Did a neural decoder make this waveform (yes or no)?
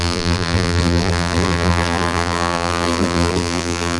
yes